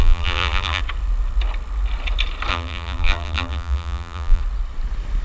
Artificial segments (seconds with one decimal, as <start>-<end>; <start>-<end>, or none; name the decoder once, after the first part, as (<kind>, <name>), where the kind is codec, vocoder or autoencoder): 0.0-0.8 (vocoder, BigVGAN v2); 2.5-4.4

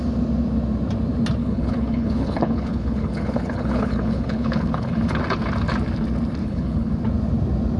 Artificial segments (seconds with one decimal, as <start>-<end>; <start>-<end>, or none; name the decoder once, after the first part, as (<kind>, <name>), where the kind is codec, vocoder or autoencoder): 1.4-5.2 (codec, HILCodec); 6.4-6.9

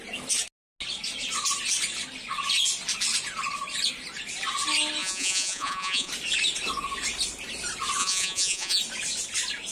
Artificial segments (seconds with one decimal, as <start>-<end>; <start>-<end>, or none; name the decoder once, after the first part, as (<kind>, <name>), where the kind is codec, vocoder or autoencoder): 5.0-6.1 (vocoder, Vocos); 8.0-8.8

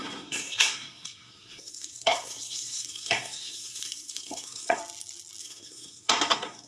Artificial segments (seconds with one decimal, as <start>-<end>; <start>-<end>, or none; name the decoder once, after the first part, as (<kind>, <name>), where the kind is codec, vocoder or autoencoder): 0.0-4.8 (codec, SNAC); 5.4-6.7